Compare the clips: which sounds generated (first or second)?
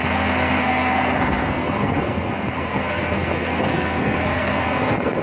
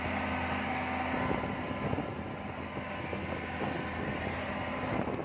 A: first